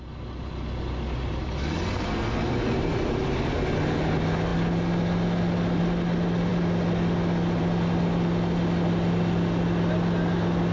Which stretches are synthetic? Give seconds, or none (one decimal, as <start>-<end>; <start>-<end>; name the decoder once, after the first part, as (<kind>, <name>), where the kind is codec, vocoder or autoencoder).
none